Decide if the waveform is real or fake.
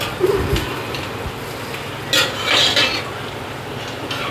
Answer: real